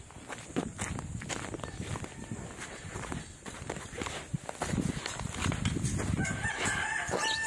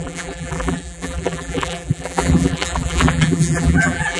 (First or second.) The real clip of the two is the first